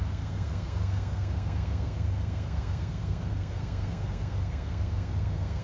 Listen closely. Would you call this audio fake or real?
fake